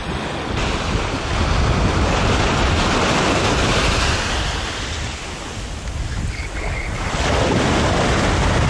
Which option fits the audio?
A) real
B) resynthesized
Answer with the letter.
A